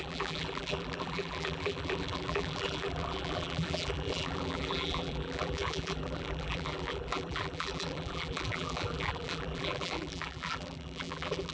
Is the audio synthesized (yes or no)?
yes